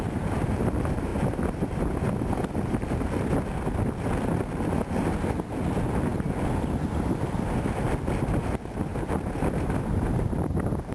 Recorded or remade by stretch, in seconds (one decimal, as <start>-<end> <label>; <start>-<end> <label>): 0.0-8.9 recorded; 8.9-10.9 remade